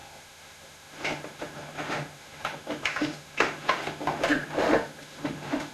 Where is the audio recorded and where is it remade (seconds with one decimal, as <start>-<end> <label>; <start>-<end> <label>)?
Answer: 0.0-5.7 remade